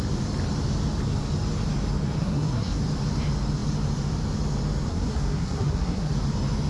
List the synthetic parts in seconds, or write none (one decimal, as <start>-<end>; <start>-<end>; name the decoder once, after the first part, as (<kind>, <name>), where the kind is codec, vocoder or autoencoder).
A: 2.2-2.8 (codec, SNAC); 4.9-6.1

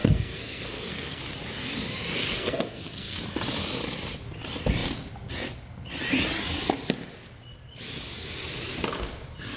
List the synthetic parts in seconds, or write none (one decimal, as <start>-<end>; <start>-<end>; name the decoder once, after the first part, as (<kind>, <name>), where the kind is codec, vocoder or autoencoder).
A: 0.0-1.2 (codec, SNAC); 2.2-3.2

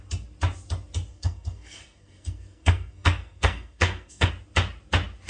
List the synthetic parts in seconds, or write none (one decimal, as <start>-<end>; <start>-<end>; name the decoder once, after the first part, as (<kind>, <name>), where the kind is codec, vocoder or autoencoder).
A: 1.1-4.3 (codec, SNAC)

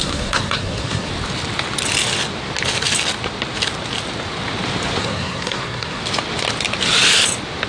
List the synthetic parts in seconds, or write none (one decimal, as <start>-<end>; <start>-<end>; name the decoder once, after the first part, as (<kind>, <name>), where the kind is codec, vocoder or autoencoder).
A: 0.0-1.1 (codec, SNAC); 5.0-6.0

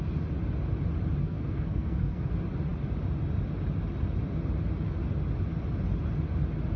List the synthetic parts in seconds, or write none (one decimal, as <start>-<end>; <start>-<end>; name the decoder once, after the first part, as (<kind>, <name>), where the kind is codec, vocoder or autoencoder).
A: 1.2-2.3 (codec, SNAC)

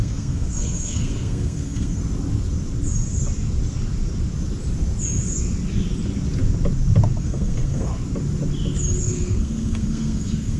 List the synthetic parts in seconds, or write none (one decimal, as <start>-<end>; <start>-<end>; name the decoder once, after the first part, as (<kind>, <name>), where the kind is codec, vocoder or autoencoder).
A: 0.0-2.0 (codec, SNAC); 7.2-7.9; 9.0-10.6

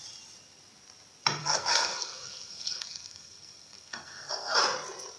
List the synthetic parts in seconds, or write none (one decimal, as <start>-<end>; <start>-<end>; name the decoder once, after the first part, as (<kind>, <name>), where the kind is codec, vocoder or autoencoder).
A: 1.4-4.5 (codec, SNAC)